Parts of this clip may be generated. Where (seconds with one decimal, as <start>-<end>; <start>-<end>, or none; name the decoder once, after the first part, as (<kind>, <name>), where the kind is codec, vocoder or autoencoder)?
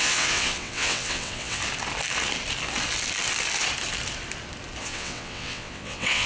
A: 0.0-1.6 (vocoder, WaveNeXt); 4.8-6.3